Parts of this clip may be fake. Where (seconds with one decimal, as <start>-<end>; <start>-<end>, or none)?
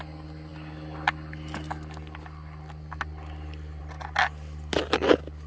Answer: none